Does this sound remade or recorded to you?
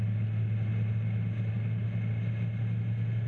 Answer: recorded